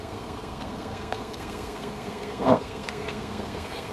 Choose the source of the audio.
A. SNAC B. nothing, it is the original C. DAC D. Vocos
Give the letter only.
A